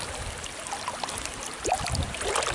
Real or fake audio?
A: real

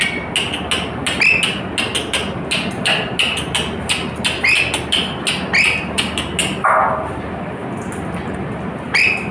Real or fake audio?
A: real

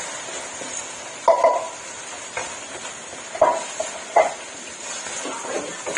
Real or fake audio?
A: real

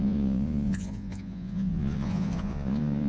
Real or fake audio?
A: fake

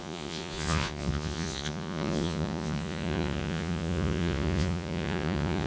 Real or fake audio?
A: fake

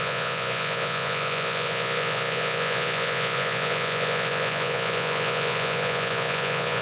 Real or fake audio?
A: fake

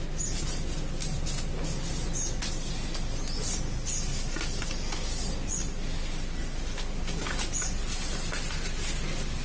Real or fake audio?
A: real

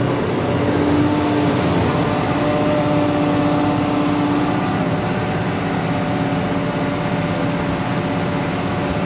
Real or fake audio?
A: real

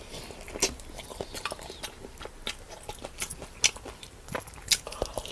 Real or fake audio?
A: real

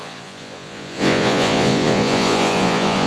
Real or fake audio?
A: fake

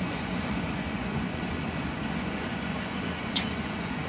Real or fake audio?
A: fake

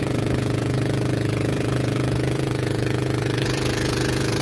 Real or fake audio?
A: fake